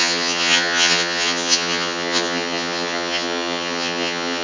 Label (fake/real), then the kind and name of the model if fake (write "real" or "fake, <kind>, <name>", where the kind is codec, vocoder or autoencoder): fake, vocoder, HiFi-GAN